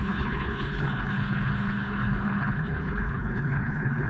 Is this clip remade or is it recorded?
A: remade